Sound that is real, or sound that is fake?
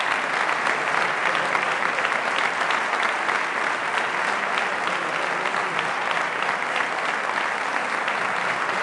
real